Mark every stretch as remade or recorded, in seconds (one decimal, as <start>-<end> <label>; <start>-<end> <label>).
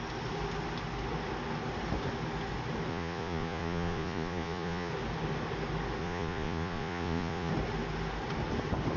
0.0-2.9 recorded; 2.9-4.9 remade; 4.9-6.0 recorded; 6.0-7.5 remade; 7.5-9.0 recorded